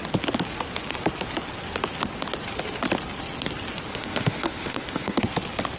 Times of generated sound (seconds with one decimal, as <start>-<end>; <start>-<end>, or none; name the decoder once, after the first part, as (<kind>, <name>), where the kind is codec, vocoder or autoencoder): 3.9-5.2 (autoencoder, DAC-VAE)